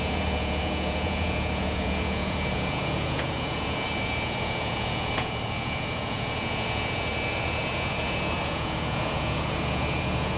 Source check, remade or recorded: remade